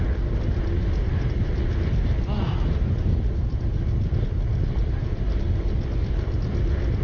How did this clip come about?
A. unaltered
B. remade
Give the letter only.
A